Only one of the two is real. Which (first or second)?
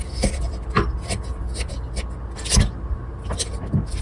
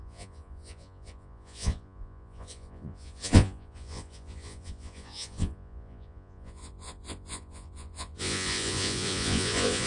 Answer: first